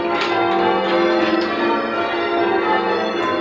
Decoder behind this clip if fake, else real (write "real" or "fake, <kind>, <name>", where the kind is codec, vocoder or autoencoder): real